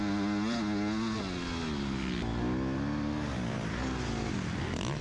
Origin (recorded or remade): recorded